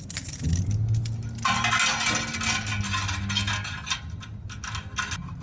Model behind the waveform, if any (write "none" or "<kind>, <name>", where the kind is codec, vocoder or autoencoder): none